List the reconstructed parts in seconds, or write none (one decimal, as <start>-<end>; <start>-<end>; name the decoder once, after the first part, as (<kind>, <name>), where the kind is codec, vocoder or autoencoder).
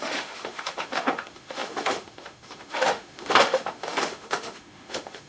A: 0.0-5.3 (autoencoder, DAC-VAE)